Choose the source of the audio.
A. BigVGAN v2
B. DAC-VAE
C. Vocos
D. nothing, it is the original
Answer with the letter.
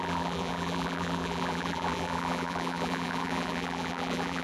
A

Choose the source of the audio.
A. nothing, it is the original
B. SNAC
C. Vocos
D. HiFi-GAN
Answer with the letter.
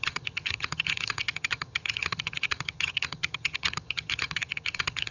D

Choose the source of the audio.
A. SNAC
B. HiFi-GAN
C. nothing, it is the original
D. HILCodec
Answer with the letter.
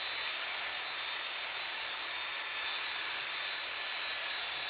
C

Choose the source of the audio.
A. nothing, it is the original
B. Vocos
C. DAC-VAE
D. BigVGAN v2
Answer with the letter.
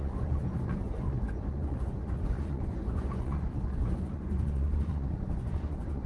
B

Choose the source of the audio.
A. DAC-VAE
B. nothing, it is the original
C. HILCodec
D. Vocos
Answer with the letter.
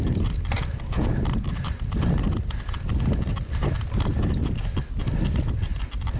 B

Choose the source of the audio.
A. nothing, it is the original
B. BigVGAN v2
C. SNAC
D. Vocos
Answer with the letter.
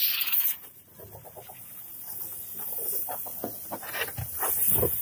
A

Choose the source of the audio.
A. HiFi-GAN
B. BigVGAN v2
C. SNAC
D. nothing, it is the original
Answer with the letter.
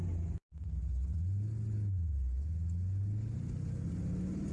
D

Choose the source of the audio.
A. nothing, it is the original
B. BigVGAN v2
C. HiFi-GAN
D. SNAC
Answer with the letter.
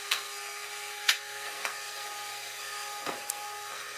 D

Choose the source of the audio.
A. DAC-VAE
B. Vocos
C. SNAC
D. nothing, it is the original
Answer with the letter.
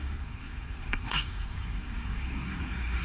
C